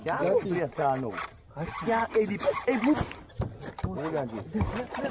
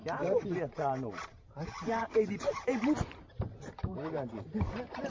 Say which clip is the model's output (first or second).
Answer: second